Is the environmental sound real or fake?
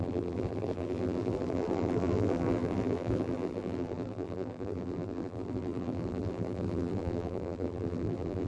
fake